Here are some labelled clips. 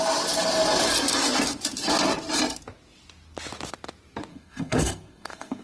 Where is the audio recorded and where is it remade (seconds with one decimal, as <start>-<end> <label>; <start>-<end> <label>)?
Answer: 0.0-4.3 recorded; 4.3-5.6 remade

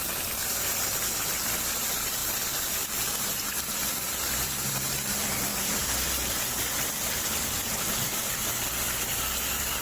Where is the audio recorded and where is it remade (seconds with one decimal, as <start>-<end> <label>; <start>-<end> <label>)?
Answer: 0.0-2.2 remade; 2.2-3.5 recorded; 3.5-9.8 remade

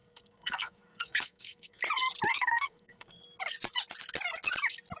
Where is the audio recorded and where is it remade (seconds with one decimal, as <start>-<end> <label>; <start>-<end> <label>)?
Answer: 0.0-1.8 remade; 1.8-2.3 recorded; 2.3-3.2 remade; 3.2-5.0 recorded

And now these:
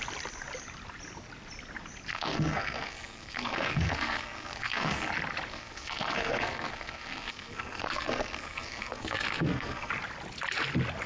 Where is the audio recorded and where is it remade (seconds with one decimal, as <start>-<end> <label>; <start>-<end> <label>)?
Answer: 0.0-2.1 recorded; 2.1-5.1 remade; 5.1-5.5 recorded; 5.5-9.9 remade; 9.9-11.1 recorded

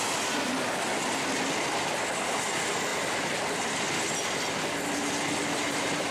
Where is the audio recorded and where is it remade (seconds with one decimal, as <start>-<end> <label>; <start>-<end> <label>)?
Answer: 0.0-6.1 recorded

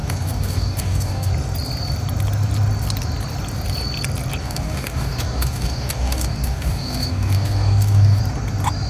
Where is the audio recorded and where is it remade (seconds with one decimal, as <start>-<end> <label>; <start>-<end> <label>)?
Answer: 0.0-1.3 remade; 1.3-4.4 recorded; 4.4-8.2 remade; 8.2-8.9 recorded